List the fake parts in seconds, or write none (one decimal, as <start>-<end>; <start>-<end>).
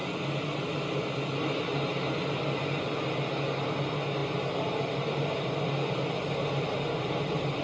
none